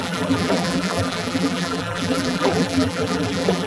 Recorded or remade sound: remade